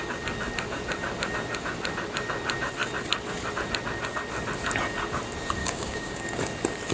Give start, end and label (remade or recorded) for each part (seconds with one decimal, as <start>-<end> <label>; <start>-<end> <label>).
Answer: 0.0-5.6 recorded; 5.6-6.2 remade; 6.2-6.9 recorded